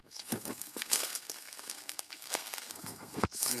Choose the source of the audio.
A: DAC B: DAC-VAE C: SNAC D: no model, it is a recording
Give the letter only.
C